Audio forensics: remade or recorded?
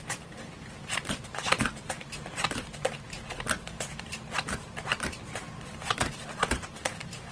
remade